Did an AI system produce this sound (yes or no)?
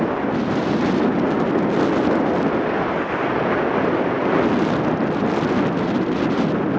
no